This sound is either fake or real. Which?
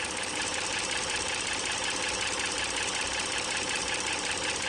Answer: real